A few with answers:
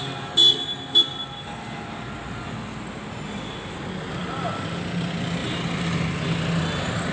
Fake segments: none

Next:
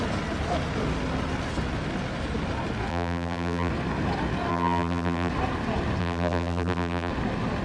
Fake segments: 2.9-3.7 (vocoder, BigVGAN v2); 4.5-5.3; 6.0-7.1

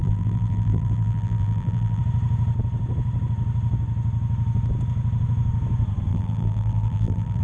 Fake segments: 0.0-2.0 (vocoder, BigVGAN v2); 6.1-7.4